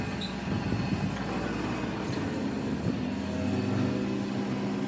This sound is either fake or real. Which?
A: real